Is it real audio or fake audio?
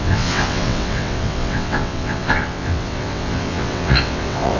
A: fake